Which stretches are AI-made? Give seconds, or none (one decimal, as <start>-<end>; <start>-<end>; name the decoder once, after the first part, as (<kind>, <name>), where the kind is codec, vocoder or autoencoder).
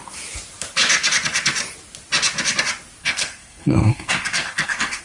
3.0-5.0 (codec, SNAC)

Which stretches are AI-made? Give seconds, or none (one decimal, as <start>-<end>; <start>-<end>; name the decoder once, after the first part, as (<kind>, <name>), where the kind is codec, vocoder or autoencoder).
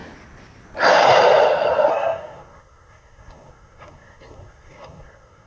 1.9-5.5 (codec, SNAC)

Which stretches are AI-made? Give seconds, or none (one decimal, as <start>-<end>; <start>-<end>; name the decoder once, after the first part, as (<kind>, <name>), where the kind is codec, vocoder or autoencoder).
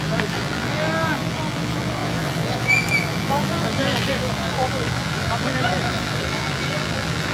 0.0-7.3 (vocoder, BigVGAN v2)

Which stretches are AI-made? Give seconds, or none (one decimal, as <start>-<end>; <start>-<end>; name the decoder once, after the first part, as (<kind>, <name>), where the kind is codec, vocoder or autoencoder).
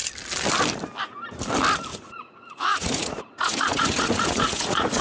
1.9-5.0 (vocoder, Vocos)